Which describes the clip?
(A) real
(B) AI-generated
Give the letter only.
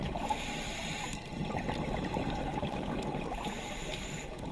A